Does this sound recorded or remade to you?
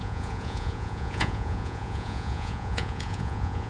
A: remade